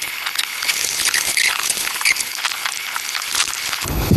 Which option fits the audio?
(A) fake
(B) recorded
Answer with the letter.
A